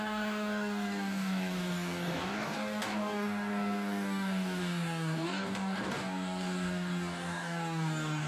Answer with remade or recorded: remade